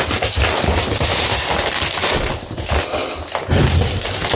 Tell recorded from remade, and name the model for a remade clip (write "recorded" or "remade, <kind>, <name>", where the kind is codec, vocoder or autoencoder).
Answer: recorded